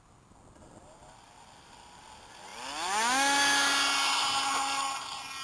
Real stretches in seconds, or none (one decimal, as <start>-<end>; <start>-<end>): 0.0-5.4